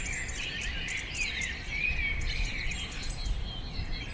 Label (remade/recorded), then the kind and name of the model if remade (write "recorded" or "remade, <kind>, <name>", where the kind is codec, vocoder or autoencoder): recorded